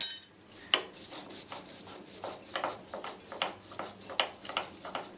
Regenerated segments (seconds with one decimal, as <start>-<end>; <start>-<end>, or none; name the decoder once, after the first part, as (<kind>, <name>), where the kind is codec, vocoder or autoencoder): none